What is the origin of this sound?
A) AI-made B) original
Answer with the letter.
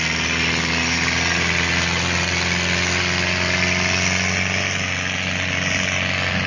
B